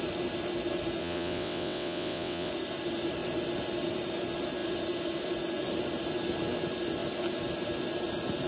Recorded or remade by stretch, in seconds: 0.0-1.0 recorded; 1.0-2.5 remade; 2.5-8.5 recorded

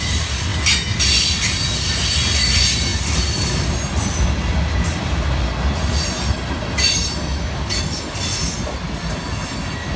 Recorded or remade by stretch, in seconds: 0.0-10.0 recorded

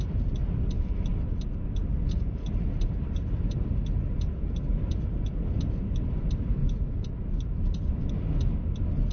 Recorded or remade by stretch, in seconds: 0.0-9.1 recorded

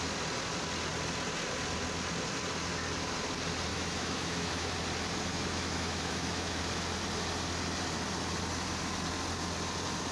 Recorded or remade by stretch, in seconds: 0.0-3.7 recorded; 3.7-4.7 remade; 4.7-5.3 recorded; 5.3-6.6 remade; 6.6-10.1 recorded

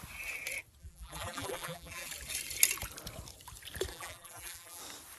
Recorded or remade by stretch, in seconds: 0.0-0.8 recorded; 0.8-2.1 remade; 2.1-3.9 recorded; 3.9-4.8 remade; 4.8-5.2 recorded

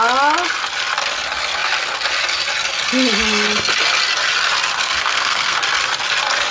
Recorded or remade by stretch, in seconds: 0.0-4.8 recorded; 4.8-5.6 remade; 5.6-6.5 recorded